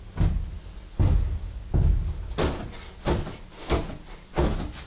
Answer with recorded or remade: recorded